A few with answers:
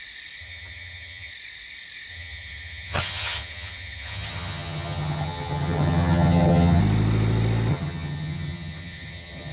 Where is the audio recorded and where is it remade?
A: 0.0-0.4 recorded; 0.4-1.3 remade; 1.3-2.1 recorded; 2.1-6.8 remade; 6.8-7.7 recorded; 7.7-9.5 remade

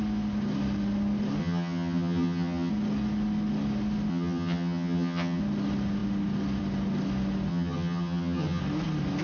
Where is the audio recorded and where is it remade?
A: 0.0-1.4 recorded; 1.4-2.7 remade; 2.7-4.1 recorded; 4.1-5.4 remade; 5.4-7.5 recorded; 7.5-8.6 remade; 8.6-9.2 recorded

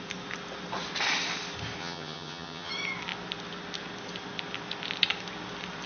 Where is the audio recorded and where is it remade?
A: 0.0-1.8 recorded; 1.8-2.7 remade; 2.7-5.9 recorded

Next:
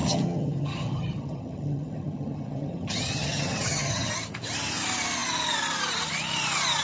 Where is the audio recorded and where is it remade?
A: 0.0-4.1 remade; 4.1-6.8 recorded

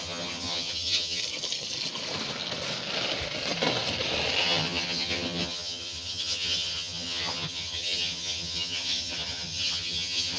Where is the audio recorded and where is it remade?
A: 0.0-1.2 remade; 1.2-4.4 recorded; 4.4-10.4 remade

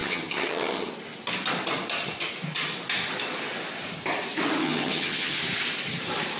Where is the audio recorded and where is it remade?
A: 0.0-0.9 remade; 0.9-4.6 recorded; 4.6-5.4 remade; 5.4-6.4 recorded